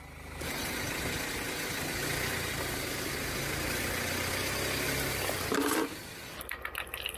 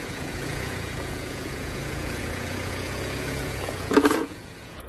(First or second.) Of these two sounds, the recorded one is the first